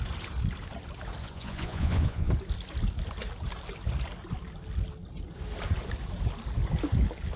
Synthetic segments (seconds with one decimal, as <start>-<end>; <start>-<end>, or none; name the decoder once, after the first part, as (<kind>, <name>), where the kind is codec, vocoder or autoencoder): 1.2-2.3 (vocoder, Vocos)